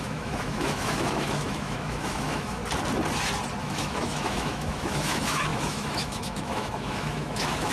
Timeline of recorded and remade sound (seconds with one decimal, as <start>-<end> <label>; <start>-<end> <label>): 0.0-2.6 remade; 2.6-3.6 recorded; 3.6-7.7 remade